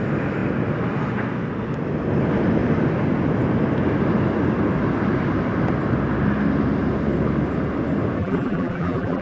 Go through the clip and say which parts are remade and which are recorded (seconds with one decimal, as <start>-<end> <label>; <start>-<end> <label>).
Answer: 0.0-8.2 recorded; 8.2-9.2 remade